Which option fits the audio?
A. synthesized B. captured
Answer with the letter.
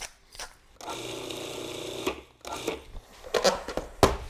B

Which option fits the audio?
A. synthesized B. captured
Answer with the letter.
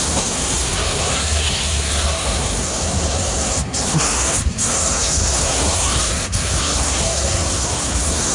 A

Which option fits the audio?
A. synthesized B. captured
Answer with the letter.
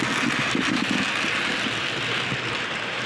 B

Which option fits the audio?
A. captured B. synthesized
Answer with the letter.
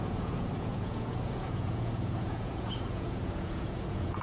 B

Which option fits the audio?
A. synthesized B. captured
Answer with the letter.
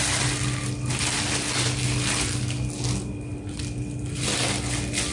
B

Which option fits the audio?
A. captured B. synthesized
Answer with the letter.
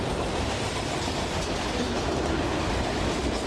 A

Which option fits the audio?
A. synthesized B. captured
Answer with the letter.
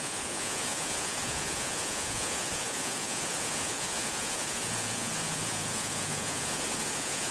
A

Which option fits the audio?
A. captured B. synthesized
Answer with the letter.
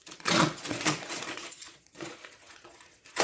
B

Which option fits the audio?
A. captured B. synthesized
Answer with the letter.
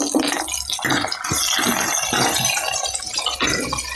A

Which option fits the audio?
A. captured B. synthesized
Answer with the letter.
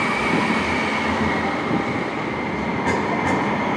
A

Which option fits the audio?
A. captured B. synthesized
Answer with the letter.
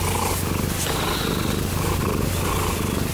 A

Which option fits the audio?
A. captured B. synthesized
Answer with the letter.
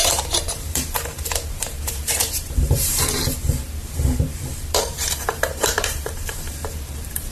B